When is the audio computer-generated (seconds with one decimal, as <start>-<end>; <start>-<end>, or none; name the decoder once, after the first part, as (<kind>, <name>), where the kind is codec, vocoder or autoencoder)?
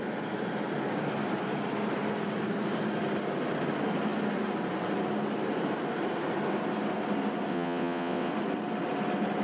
7.5-8.3 (vocoder, WaveNeXt)